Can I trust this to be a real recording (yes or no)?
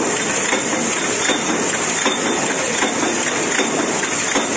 yes